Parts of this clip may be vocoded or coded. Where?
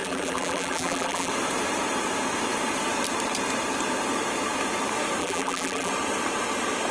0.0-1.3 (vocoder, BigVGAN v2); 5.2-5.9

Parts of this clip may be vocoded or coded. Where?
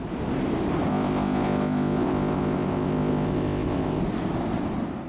0.9-4.0 (codec, ZipCodec)